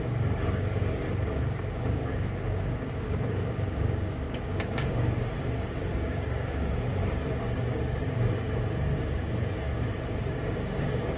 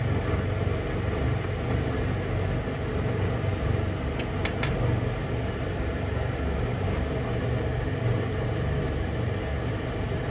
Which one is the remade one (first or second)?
first